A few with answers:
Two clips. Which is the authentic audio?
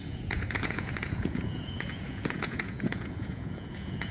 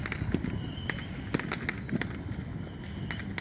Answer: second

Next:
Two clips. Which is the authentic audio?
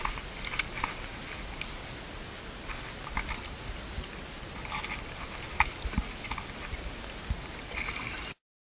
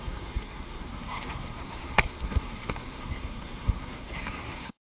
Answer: first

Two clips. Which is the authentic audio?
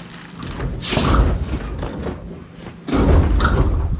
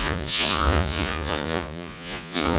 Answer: first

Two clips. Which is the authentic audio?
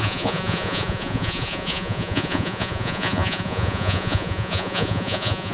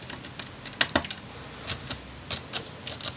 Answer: second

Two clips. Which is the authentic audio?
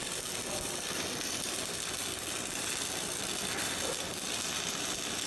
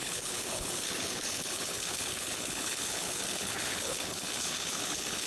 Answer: first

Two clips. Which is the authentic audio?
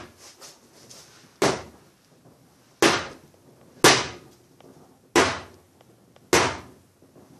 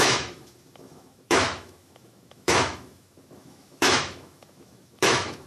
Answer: first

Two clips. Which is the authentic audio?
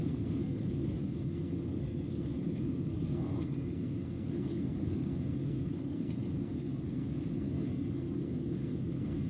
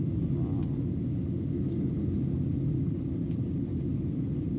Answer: second